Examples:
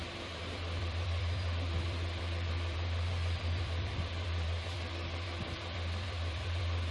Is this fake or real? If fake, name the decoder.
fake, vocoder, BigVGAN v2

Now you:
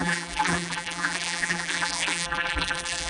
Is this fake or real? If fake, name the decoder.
fake, vocoder, BigVGAN v2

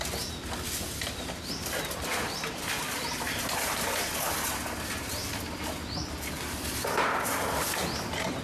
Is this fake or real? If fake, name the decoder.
real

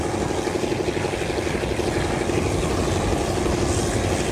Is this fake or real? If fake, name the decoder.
real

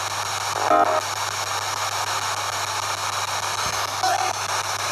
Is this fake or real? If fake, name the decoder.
real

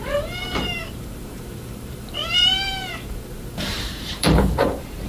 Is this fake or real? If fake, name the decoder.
fake, vocoder, BigVGAN v2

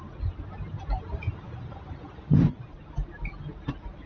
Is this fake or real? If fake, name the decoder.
fake, vocoder, BigVGAN v2